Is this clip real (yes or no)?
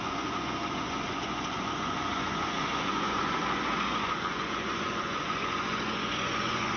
no